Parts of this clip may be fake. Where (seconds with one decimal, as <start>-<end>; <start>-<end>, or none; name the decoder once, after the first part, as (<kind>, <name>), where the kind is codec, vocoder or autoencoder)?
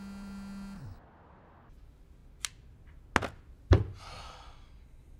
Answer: none